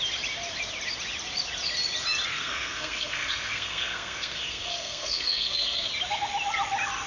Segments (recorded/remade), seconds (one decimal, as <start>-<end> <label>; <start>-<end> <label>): 0.0-2.3 recorded; 2.3-5.9 remade; 5.9-7.1 recorded